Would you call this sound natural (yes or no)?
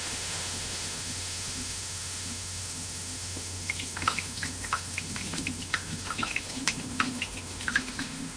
no